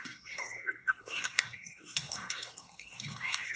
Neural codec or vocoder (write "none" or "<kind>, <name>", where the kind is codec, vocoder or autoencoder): codec, SNAC